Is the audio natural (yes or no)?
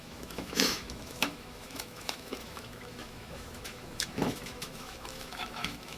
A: no